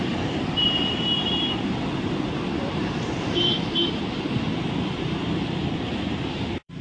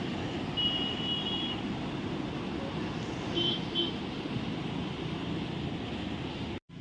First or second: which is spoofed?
first